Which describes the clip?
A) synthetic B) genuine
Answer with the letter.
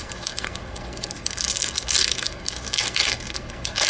A